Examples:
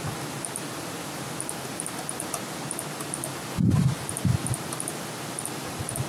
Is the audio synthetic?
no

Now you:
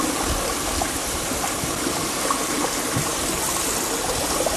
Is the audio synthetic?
no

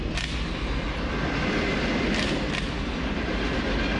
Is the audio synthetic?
no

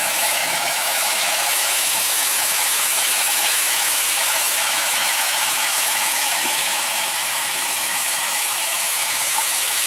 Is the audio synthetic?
yes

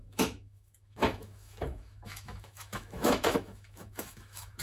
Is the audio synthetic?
yes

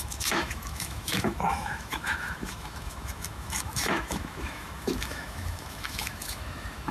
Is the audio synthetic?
yes